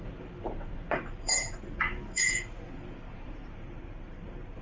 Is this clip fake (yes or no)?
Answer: yes